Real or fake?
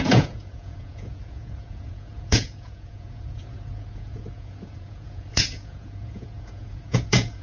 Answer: fake